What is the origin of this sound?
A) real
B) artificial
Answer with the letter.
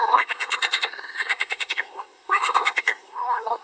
B